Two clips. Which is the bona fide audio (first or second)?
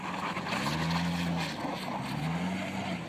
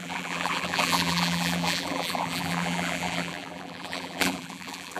first